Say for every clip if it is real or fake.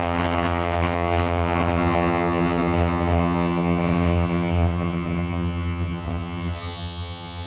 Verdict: fake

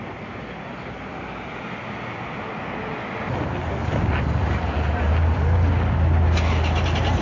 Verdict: real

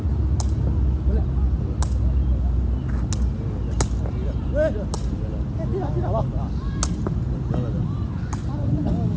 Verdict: real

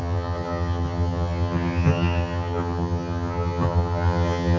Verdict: fake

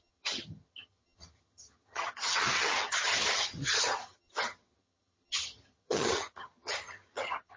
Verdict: fake